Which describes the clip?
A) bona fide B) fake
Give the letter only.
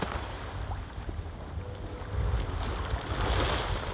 A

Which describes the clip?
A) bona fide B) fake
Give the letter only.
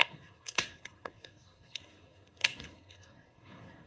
B